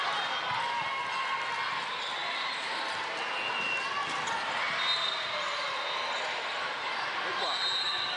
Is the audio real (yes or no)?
yes